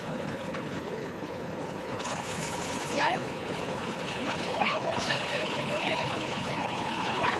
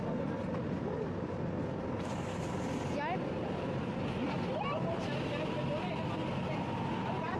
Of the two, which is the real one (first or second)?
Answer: second